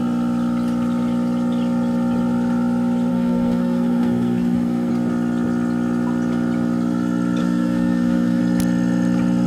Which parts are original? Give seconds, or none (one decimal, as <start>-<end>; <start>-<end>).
0.0-3.1; 4.9-7.4; 8.4-9.5